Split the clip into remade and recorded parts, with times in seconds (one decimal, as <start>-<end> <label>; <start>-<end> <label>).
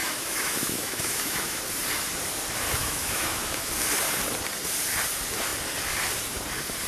0.0-1.6 remade; 1.6-2.8 recorded; 2.8-3.7 remade; 3.7-6.9 recorded